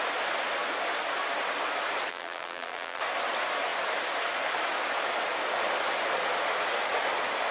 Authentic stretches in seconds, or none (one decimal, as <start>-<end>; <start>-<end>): 0.0-2.1; 3.0-7.5